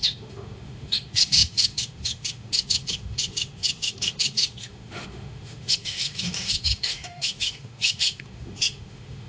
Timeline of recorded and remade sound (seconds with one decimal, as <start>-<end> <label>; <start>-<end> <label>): 0.0-9.3 remade